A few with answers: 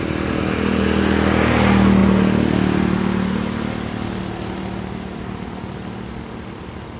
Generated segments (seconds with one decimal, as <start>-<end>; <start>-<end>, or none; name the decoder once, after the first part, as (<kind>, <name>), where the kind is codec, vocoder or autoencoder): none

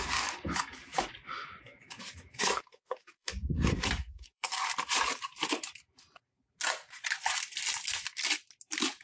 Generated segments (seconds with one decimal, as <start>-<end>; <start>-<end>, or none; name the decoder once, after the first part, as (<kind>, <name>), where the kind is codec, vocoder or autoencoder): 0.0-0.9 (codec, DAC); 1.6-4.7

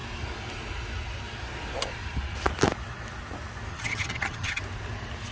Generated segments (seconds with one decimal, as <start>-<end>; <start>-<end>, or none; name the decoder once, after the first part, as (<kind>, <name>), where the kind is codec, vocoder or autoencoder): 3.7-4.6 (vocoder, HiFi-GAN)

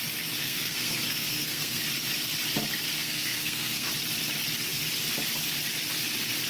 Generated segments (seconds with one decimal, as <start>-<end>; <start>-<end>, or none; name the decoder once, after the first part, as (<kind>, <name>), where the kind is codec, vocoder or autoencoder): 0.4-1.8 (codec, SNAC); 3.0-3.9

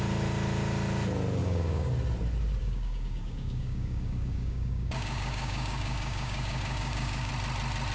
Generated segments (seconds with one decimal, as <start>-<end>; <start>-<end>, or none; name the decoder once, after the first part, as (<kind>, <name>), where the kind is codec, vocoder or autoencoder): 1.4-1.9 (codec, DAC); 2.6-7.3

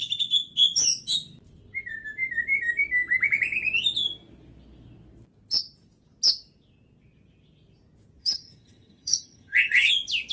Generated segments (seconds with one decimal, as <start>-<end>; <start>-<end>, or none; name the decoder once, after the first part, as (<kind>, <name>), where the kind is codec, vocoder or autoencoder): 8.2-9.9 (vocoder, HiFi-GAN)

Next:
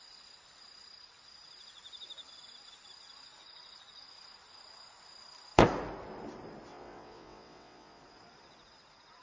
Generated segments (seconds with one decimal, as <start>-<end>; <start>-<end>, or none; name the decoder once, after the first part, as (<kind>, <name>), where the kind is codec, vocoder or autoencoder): 6.7-8.0 (vocoder, WaveNeXt)

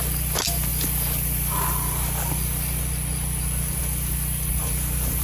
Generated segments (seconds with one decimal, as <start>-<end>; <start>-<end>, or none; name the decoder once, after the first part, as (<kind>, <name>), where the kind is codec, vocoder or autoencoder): none